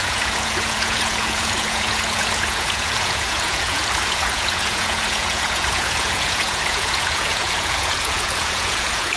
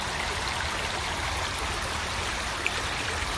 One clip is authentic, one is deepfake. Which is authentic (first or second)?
second